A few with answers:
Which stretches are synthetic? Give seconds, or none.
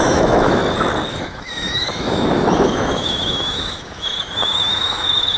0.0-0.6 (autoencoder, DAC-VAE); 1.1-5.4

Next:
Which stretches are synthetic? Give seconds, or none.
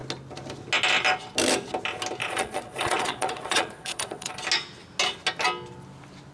2.2-4.3 (vocoder, Vocos)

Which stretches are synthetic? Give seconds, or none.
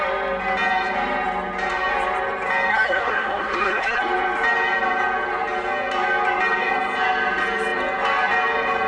2.7-4.0 (codec, SNAC)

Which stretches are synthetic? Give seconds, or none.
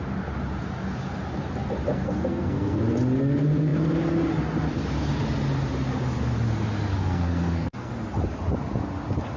1.9-2.8 (codec, SNAC); 7.0-7.9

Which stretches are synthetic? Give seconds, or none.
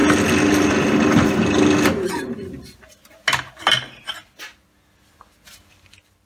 none